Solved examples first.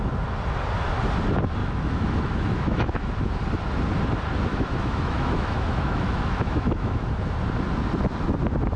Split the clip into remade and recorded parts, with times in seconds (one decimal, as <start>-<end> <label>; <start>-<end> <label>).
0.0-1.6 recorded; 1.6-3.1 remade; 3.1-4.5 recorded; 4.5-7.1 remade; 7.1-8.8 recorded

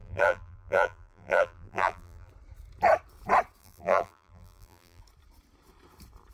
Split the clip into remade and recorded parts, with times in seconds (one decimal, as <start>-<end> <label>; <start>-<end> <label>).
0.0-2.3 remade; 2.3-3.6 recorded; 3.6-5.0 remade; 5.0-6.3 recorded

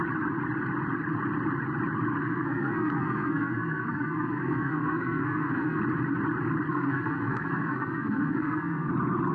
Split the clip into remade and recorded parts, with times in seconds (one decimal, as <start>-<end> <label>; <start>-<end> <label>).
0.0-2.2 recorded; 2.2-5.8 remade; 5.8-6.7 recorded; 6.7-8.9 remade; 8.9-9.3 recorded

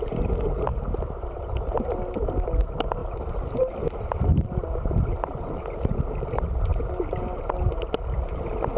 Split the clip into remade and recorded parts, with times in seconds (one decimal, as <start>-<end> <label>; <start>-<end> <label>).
0.0-8.8 recorded

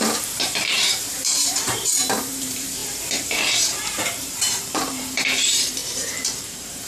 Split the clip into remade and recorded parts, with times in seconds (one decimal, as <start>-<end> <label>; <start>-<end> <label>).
0.0-6.9 remade